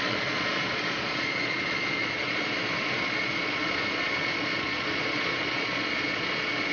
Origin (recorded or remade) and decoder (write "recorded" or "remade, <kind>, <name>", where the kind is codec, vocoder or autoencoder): remade, vocoder, Vocos